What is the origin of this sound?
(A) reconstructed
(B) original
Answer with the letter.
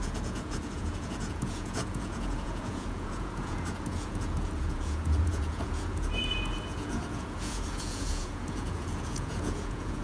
A